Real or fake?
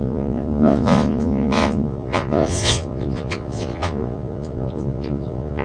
fake